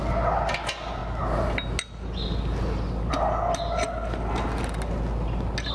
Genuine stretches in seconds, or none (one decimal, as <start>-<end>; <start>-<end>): 0.0-5.7